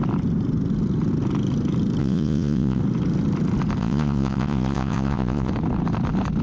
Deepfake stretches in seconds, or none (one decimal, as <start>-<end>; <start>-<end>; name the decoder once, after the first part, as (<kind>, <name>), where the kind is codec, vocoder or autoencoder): 2.0-2.8 (vocoder, Vocos); 3.8-5.5